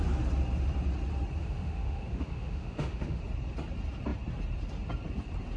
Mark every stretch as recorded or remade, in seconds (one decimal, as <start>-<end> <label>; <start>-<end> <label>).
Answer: 0.0-1.4 recorded; 1.4-3.2 remade; 3.2-5.6 recorded